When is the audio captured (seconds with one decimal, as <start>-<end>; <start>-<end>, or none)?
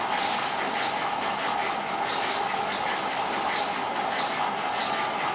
0.0-5.3